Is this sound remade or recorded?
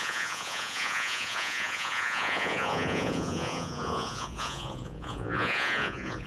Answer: remade